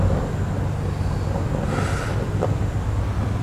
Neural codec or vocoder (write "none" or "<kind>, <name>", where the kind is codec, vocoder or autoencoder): none